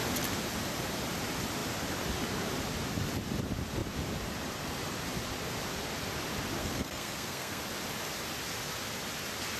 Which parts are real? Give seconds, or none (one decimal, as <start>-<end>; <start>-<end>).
0.0-6.6; 7.6-9.6